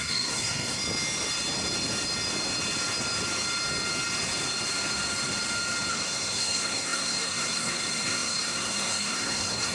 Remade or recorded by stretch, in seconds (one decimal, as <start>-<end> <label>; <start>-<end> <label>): 0.0-0.8 remade; 0.8-5.9 recorded; 5.9-9.7 remade